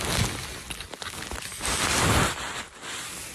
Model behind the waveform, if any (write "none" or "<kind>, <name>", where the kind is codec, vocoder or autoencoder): none